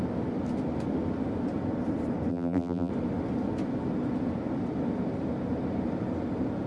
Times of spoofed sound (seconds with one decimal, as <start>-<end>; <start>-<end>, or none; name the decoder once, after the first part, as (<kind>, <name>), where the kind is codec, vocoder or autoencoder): 2.3-2.9 (vocoder, BigVGAN v2)